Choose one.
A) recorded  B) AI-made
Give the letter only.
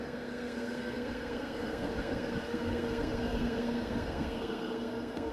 B